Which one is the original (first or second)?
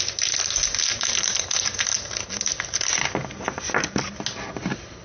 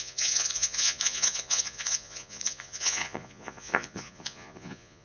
first